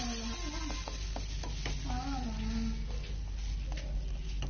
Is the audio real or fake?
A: real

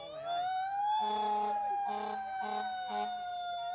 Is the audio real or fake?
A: real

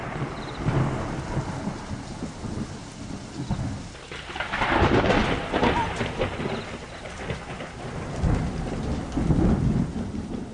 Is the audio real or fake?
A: real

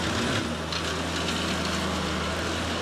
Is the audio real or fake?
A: real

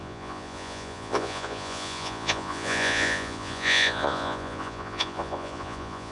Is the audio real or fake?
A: fake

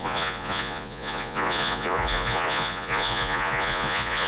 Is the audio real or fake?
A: fake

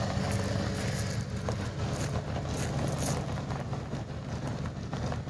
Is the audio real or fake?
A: real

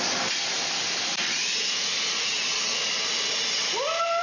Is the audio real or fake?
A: real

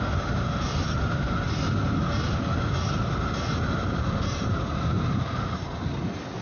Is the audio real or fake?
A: real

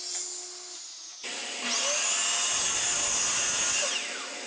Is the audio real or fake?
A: real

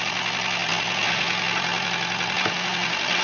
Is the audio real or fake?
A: real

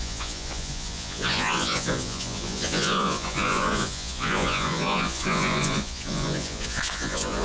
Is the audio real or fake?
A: fake